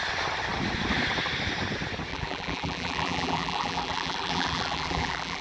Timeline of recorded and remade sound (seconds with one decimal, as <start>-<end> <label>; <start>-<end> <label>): 0.0-2.1 recorded; 2.1-5.4 remade